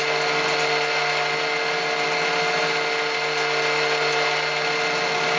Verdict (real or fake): real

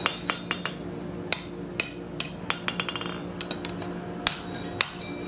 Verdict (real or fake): real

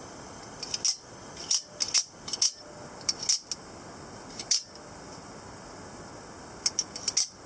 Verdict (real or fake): real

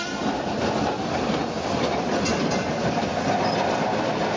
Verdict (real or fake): real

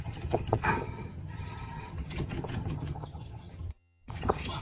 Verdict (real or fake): fake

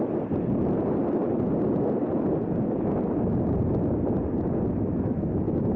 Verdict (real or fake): real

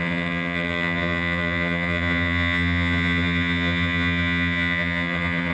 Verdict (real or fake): fake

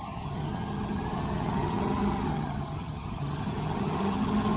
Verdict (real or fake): fake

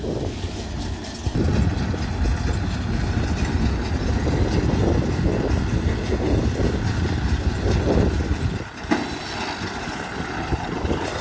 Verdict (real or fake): real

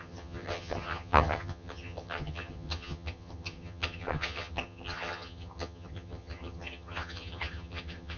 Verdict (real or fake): fake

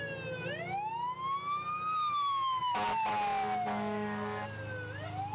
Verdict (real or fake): real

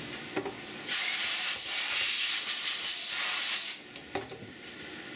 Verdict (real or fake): real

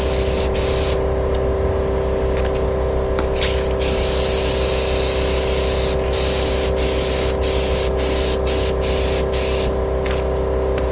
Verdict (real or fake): real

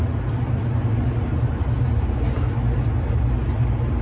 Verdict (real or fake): real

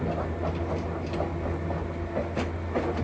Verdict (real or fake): real